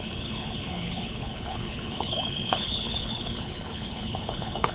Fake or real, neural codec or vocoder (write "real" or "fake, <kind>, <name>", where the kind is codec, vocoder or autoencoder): fake, codec, HILCodec